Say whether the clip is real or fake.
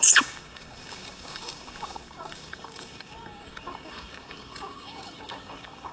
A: fake